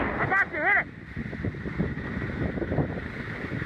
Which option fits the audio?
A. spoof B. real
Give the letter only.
B